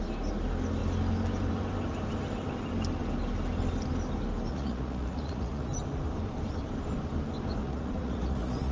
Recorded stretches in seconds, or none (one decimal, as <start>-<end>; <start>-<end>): 0.0-4.5; 5.7-7.6